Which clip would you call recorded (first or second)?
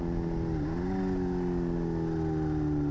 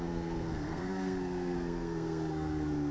first